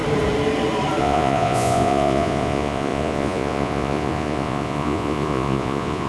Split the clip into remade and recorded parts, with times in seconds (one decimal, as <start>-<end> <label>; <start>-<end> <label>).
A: 0.0-1.0 recorded; 1.0-6.1 remade